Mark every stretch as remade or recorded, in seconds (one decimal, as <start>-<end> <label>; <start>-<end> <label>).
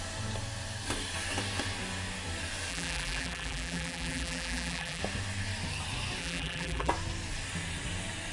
0.0-2.7 recorded; 2.7-5.0 remade; 5.0-6.2 recorded; 6.2-6.9 remade; 6.9-8.3 recorded